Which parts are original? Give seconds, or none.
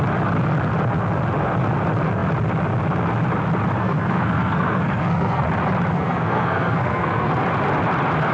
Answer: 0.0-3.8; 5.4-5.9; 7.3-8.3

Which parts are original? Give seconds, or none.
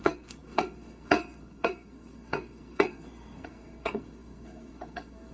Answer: none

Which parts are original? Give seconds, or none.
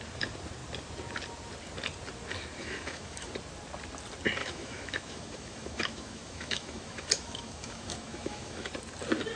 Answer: 0.0-2.6; 3.3-4.4; 8.7-9.4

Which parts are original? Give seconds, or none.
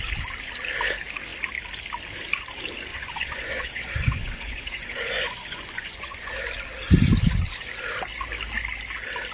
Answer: 0.0-2.9; 6.3-9.3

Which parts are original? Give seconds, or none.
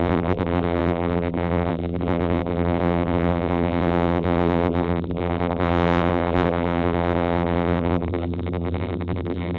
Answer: none